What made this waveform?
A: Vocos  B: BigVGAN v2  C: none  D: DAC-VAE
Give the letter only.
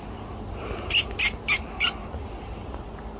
B